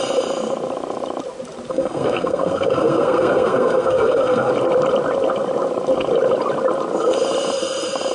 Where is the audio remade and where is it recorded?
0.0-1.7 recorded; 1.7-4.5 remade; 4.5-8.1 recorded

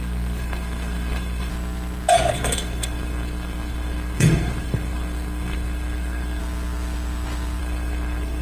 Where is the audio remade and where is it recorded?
0.0-1.5 remade; 1.5-2.3 recorded; 2.3-6.4 remade; 6.4-7.6 recorded; 7.6-8.4 remade

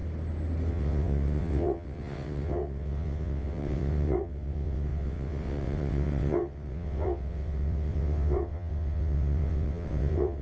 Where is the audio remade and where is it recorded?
0.0-0.7 recorded; 0.7-10.4 remade

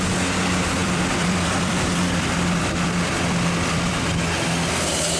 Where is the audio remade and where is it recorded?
0.0-0.8 recorded; 0.8-3.9 remade; 3.9-5.2 recorded